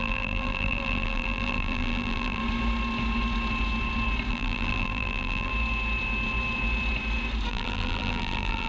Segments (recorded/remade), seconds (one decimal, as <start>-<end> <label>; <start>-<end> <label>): 0.0-2.4 remade; 2.4-4.3 recorded; 4.3-5.5 remade; 5.5-7.5 recorded; 7.5-8.7 remade